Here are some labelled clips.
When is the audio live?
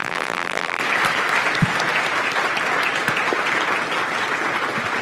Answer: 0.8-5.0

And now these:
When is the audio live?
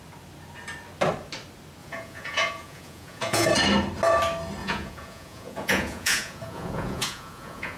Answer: 0.0-1.8; 3.5-4.6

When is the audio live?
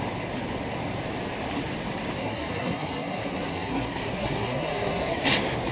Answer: 0.0-2.2; 5.2-5.7